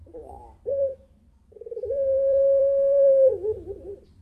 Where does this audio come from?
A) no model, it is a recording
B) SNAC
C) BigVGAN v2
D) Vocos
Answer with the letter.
C